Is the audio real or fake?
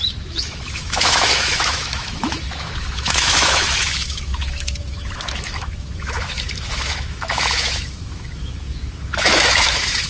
fake